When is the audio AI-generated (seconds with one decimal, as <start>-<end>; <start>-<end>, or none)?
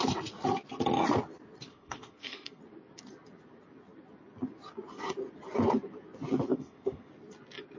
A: 1.7-2.6; 6.5-7.1